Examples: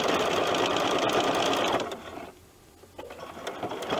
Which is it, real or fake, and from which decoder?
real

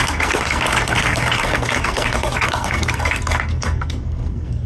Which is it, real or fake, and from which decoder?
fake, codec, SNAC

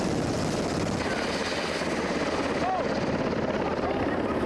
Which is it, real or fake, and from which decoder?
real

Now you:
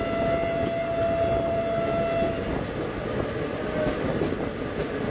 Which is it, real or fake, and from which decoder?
real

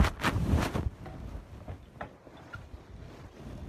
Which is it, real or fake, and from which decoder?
real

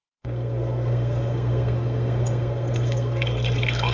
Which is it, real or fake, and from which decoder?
fake, codec, SNAC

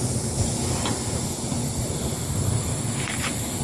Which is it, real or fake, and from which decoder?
real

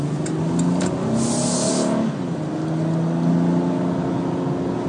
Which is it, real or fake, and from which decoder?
real